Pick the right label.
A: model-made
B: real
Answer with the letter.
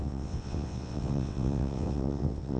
A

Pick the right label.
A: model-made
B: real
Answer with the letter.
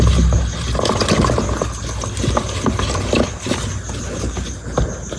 B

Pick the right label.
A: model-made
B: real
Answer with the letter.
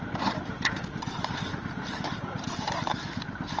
A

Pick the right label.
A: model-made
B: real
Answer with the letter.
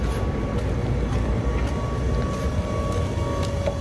B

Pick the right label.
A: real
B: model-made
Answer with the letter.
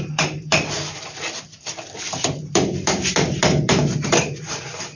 B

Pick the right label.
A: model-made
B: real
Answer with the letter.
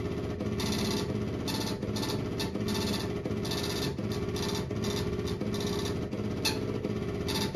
B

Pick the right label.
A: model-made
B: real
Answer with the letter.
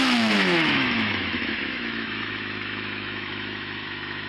A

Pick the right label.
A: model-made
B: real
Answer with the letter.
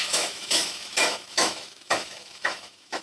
A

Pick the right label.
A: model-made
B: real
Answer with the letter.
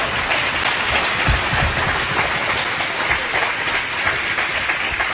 B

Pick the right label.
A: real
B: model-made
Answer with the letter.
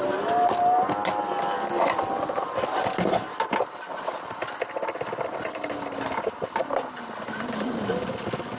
A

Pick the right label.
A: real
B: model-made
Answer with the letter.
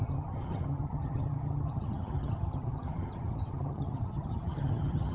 B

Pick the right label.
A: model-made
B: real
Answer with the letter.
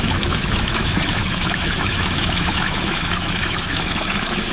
A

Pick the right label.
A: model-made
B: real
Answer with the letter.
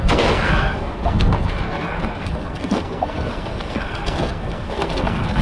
A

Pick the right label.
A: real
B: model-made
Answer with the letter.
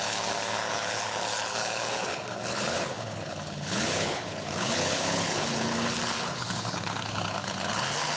B